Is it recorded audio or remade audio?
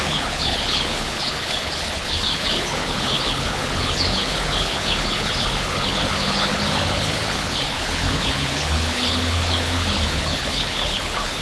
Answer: remade